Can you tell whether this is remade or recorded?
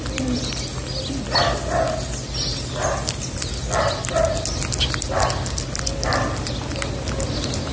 recorded